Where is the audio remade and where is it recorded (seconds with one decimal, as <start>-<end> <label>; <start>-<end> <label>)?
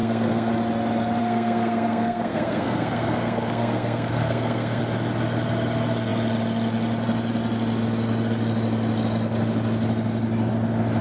0.0-0.5 remade; 0.5-1.2 recorded; 1.2-4.8 remade; 4.8-11.0 recorded